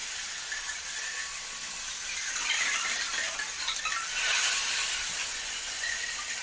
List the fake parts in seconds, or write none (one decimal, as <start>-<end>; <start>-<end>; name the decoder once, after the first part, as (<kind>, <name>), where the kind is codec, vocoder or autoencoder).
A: 5.2-6.0 (vocoder, Vocos)